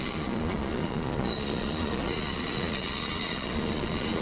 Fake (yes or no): yes